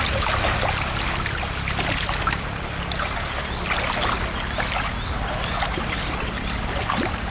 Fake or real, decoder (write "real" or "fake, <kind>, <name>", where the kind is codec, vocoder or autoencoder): real